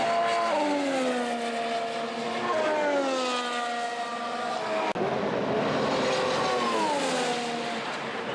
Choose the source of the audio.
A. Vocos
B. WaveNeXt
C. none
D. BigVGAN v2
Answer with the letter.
C